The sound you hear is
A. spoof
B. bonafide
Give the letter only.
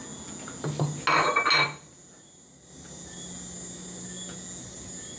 B